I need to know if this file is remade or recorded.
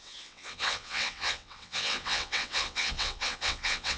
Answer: remade